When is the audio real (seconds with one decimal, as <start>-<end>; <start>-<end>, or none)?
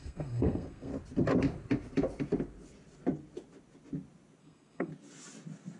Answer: 0.9-4.4; 4.9-5.8